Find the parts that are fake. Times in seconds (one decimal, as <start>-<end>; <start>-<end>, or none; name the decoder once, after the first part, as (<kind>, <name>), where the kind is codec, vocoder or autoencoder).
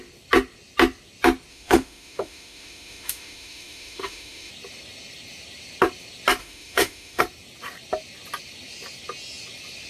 1.5-4.5 (autoencoder, DAC-VAE); 6.4-7.2